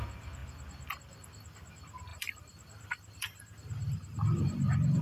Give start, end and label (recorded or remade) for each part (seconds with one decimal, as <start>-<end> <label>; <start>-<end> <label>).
0.0-2.1 recorded; 2.1-5.0 remade